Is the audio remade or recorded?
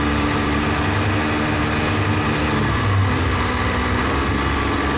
recorded